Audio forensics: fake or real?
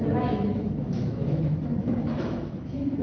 fake